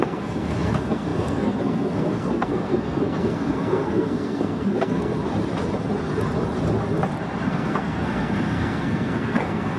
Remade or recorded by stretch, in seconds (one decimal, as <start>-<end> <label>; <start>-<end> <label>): 0.0-5.1 remade; 5.1-7.5 recorded; 7.5-9.8 remade